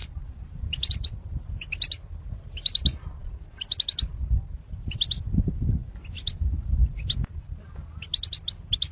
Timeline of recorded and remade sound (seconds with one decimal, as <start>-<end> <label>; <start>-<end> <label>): 0.0-1.1 remade; 1.1-8.9 recorded